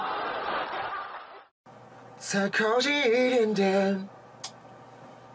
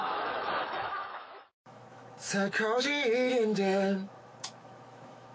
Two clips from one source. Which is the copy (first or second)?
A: second